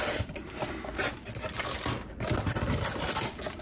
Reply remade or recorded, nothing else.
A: recorded